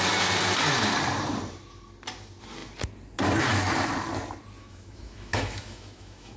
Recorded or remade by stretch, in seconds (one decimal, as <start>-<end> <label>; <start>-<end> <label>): 0.0-4.6 recorded; 4.6-6.4 remade